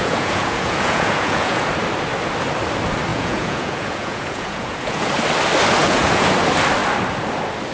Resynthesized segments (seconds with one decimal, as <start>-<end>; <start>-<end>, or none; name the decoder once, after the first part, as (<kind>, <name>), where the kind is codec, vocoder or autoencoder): 0.0-1.7 (vocoder, Vocos); 3.1-5.1; 5.8-6.3